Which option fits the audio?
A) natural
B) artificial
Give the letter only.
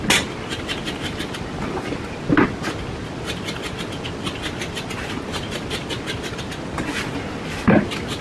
A